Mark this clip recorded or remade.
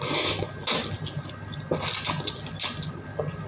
recorded